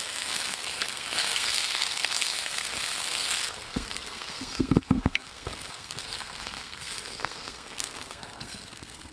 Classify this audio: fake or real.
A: fake